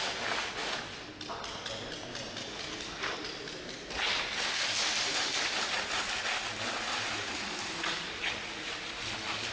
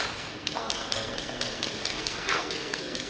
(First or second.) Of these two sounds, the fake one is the second